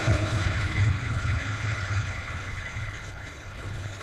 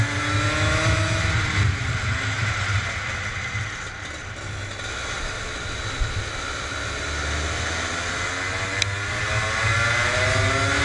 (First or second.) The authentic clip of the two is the second